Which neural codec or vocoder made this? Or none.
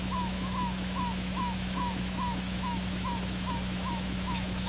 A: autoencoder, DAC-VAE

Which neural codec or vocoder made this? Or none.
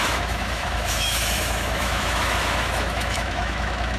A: autoencoder, DAC-VAE